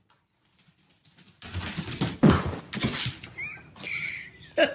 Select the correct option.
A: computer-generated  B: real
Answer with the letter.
B